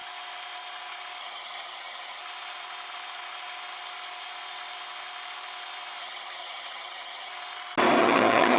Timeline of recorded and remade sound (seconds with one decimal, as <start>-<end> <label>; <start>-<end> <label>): 0.0-1.2 recorded; 1.2-2.2 remade; 2.2-6.0 recorded; 6.0-7.3 remade; 7.3-8.0 recorded; 8.0-8.6 remade